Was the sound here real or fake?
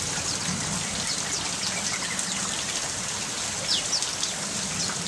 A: real